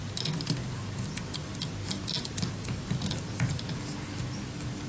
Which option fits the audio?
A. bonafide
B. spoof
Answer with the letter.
A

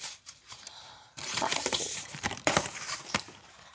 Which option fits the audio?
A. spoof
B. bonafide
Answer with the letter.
A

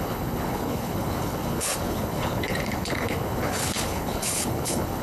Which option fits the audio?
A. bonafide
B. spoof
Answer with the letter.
B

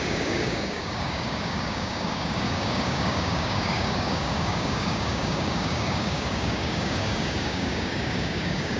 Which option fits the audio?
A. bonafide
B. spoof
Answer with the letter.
B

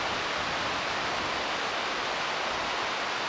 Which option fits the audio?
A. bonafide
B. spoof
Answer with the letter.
A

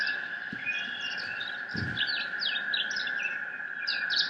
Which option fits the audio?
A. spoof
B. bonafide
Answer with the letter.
B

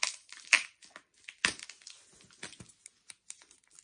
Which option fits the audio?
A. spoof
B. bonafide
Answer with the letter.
B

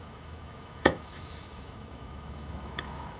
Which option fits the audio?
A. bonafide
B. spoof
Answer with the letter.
B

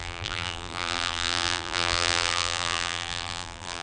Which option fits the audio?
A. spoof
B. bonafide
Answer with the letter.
A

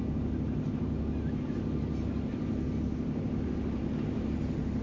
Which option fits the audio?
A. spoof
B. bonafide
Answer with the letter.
B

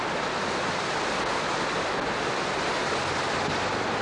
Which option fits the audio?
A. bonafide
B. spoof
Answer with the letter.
A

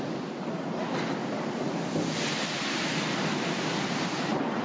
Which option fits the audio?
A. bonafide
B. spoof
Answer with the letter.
A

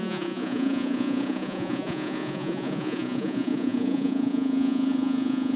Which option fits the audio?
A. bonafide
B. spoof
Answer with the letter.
B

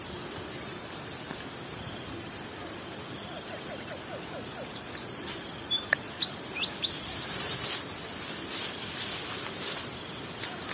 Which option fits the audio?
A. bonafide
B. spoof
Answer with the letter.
B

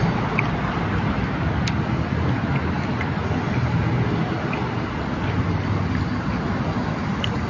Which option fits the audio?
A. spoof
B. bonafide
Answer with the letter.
B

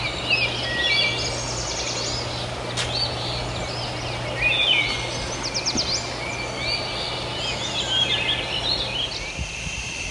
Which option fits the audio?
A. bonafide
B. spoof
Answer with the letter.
A